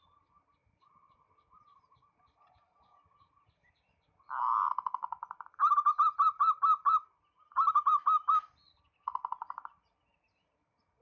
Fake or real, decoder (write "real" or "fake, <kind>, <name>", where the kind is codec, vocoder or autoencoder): fake, vocoder, BigVGAN v2